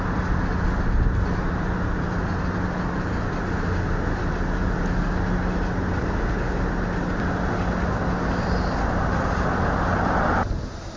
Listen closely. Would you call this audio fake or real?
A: real